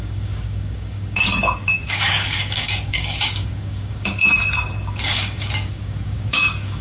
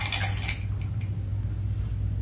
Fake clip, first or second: first